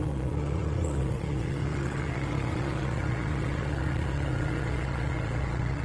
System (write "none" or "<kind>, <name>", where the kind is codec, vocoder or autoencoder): vocoder, Vocos